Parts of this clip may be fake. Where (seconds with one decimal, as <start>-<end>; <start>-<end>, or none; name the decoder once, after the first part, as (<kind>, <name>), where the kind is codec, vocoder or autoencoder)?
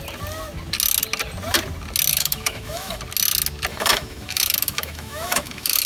2.1-3.0 (autoencoder, DAC-VAE); 3.7-5.9